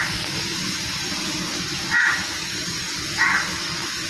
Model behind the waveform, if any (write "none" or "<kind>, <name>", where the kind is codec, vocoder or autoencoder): vocoder, BigVGAN v2